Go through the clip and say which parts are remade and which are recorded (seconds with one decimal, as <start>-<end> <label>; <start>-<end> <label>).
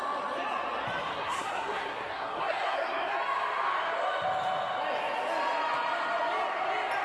0.0-1.1 recorded; 1.1-3.1 remade; 3.1-7.0 recorded